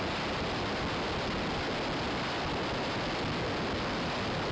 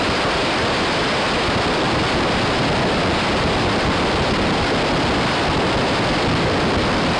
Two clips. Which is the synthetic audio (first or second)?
second